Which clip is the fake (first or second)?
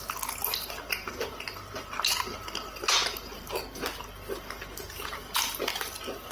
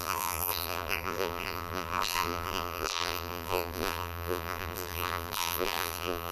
second